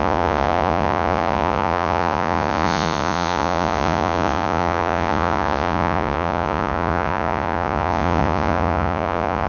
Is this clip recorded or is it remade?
remade